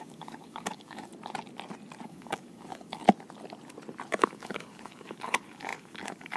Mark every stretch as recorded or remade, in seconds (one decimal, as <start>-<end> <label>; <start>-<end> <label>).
0.0-1.1 remade; 1.1-2.0 recorded; 2.0-3.0 remade; 3.0-4.1 recorded; 4.1-6.4 remade